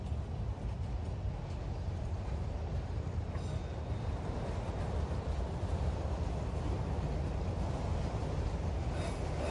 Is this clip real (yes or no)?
yes